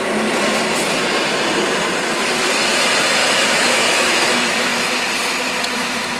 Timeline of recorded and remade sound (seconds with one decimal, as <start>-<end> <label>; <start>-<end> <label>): 0.0-3.2 recorded; 3.2-4.3 remade; 4.3-6.2 recorded